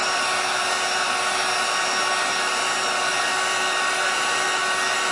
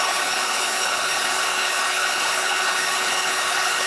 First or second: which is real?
first